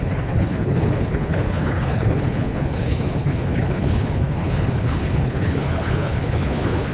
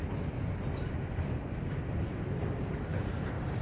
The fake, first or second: first